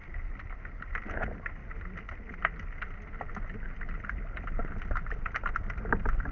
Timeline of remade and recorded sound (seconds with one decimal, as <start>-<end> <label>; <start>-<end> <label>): 0.0-6.3 recorded